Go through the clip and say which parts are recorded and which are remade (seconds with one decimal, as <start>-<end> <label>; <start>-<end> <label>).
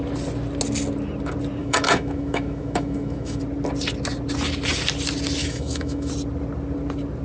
0.0-1.6 recorded; 1.6-3.4 remade; 3.4-5.4 recorded; 5.4-6.1 remade; 6.1-7.2 recorded